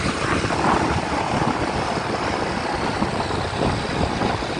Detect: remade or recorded recorded